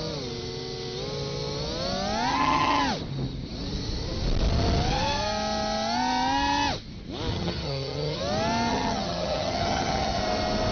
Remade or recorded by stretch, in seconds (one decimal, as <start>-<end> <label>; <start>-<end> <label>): 0.0-2.3 recorded; 2.3-2.8 remade; 2.8-7.3 recorded; 7.3-8.2 remade; 8.2-8.7 recorded; 8.7-10.2 remade; 10.2-10.7 recorded